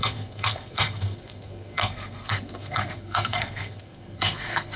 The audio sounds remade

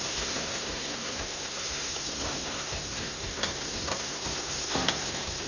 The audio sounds remade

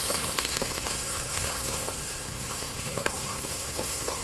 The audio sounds remade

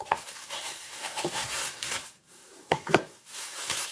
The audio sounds remade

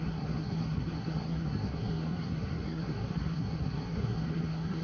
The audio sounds remade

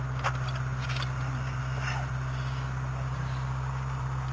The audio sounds recorded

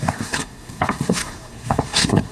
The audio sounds remade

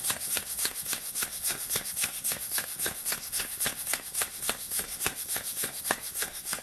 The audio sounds remade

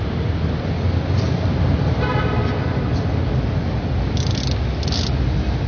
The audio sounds recorded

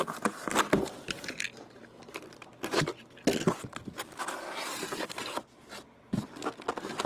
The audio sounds recorded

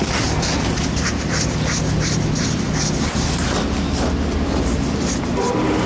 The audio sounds recorded